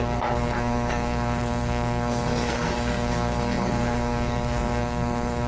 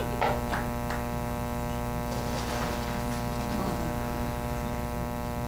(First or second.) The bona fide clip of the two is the second